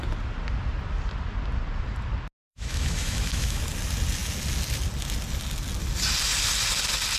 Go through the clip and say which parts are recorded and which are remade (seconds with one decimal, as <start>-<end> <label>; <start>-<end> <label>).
0.0-2.5 recorded; 2.5-3.6 remade; 3.6-7.2 recorded